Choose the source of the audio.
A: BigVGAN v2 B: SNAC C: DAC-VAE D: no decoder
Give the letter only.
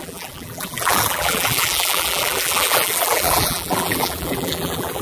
A